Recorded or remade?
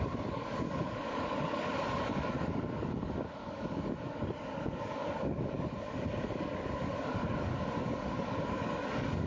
remade